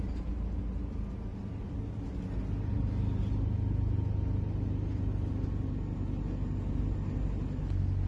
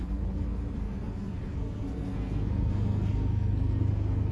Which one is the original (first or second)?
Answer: first